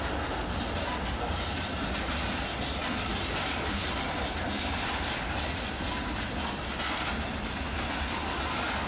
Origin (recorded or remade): recorded